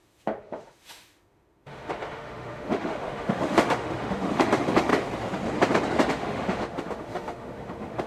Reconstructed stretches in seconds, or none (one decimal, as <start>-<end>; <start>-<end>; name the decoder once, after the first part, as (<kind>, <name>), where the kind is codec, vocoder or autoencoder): 0.0-4.9 (autoencoder, DAC-VAE); 6.1-8.1